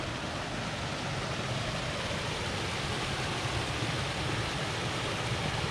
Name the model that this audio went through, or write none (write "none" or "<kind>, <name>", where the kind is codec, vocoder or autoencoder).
none